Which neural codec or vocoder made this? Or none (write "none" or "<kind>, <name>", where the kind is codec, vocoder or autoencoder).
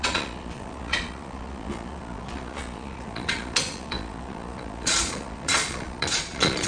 vocoder, Vocos